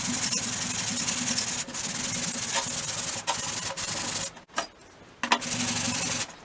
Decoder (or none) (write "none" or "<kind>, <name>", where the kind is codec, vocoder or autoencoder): none